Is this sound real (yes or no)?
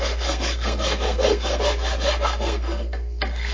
no